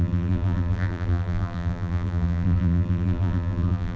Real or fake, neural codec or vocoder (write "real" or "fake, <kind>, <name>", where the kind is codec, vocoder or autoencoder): fake, vocoder, BigVGAN v2